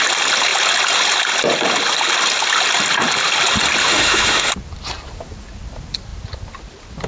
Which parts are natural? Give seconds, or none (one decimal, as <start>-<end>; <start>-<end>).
0.0-3.8; 4.5-7.1